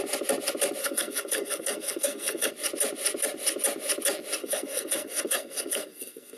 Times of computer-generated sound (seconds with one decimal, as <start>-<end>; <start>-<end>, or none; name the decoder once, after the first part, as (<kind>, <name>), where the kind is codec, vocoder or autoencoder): 0.8-2.5 (codec, SNAC); 4.4-6.4

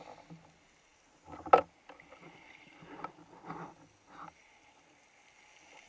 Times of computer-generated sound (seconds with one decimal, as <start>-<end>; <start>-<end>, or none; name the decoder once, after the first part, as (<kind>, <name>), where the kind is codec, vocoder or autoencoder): none

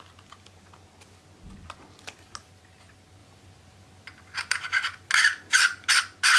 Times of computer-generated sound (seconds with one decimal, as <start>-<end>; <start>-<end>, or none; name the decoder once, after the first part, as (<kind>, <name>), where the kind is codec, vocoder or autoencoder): none

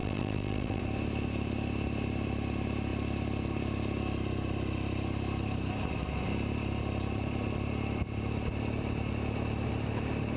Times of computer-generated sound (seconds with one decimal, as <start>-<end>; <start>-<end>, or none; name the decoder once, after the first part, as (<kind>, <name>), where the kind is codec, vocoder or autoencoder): 0.0-0.8 (vocoder, WaveNeXt)

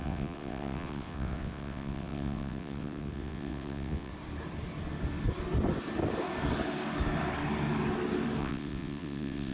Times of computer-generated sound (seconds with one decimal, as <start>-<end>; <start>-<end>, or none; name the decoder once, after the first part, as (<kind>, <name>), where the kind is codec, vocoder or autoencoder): 0.0-4.1 (vocoder, WaveNeXt); 8.4-9.5

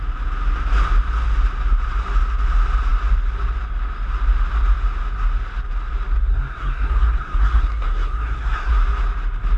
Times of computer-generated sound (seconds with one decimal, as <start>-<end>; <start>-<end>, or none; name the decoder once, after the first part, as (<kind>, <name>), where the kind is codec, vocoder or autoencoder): 6.3-8.7 (codec, SNAC)

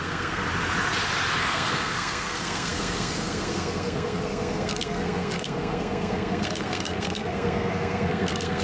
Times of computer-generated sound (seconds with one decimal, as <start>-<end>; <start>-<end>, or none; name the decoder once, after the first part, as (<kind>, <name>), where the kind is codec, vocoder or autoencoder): 0.0-0.4 (codec, SNAC); 1.4-8.6